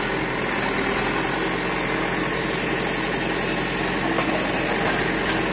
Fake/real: real